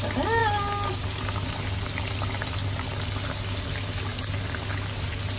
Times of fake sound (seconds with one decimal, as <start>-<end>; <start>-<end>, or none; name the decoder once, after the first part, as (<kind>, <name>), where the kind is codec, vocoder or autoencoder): none